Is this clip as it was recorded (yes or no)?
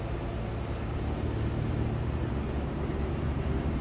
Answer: no